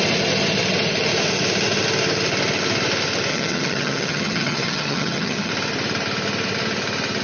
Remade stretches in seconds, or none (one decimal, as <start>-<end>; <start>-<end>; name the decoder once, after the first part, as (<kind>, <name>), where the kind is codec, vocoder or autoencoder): 3.3-5.5 (vocoder, HiFi-GAN)